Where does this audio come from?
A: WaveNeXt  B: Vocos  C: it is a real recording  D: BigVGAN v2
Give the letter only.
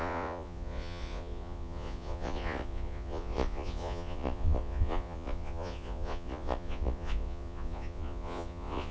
B